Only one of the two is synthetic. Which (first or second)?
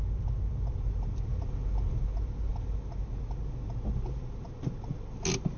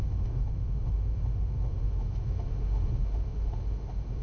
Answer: second